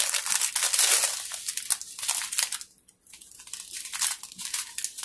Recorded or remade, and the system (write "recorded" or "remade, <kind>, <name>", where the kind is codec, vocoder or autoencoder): recorded